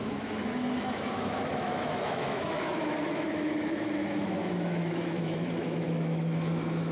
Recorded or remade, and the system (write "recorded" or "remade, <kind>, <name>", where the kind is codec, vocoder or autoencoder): remade, autoencoder, DAC-VAE